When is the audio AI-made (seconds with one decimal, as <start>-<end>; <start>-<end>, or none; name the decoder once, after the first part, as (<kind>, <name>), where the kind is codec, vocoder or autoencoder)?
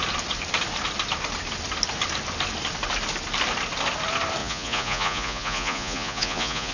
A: 4.4-6.7 (vocoder, Vocos)